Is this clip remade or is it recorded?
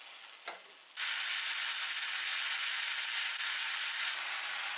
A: recorded